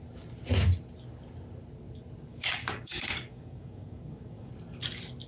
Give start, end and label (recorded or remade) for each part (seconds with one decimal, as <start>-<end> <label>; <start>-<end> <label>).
0.0-2.3 recorded; 2.3-4.5 remade; 4.5-5.3 recorded